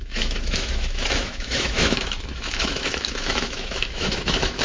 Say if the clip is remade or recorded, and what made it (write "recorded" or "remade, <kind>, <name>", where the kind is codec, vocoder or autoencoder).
remade, autoencoder, DAC-VAE